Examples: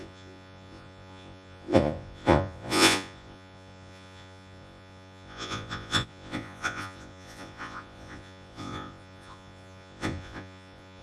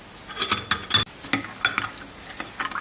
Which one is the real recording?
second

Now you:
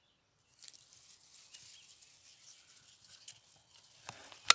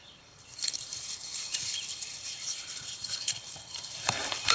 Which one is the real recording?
first